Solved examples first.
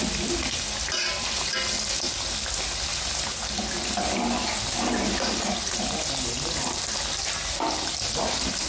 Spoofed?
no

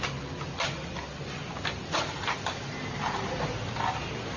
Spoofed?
no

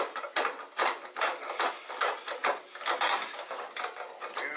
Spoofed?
no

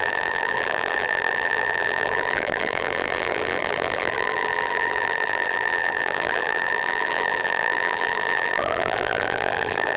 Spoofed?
yes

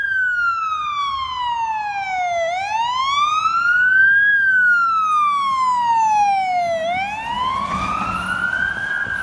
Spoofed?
no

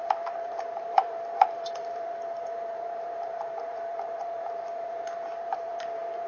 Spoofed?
yes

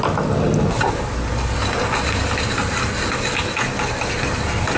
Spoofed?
no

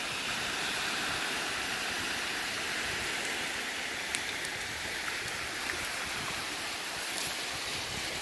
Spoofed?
yes